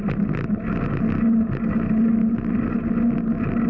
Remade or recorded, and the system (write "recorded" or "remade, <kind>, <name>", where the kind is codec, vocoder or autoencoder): recorded